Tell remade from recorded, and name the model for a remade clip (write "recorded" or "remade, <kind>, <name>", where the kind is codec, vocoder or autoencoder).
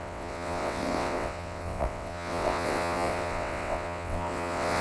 remade, vocoder, WaveNeXt